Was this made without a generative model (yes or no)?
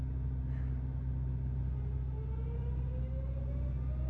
yes